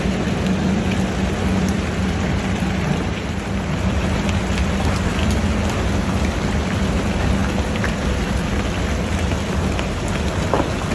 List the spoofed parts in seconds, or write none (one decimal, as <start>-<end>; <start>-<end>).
2.0-5.4; 7.4-8.8